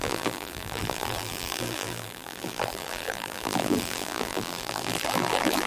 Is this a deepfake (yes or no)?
yes